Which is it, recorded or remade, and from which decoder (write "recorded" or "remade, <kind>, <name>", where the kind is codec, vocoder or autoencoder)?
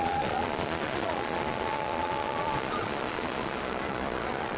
remade, vocoder, Vocos